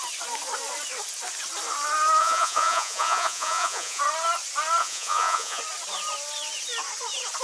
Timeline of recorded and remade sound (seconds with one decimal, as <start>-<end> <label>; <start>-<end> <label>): 0.0-2.2 recorded; 2.2-4.0 remade; 4.0-4.8 recorded; 4.8-5.6 remade; 5.6-7.4 recorded